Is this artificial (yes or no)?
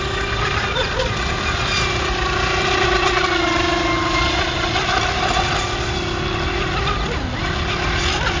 no